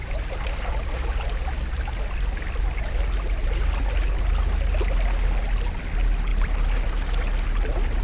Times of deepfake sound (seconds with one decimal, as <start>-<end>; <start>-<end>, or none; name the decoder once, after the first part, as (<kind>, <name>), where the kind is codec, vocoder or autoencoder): 0.0-0.7 (vocoder, BigVGAN v2); 1.7-4.2; 6.3-6.9